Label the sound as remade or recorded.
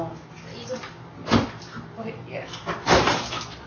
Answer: recorded